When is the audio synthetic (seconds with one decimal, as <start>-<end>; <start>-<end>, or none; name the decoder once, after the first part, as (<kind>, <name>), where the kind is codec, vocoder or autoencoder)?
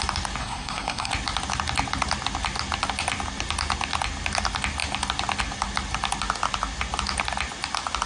0.4-1.1 (codec, SNAC)